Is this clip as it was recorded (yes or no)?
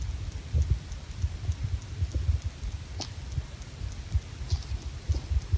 yes